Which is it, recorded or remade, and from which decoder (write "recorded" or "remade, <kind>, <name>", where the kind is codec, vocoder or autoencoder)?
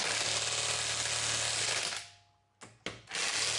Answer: recorded